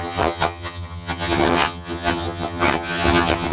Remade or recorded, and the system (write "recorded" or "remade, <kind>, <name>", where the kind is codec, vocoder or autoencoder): remade, vocoder, HiFi-GAN